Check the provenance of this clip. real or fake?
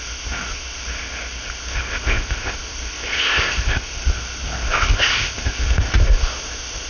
fake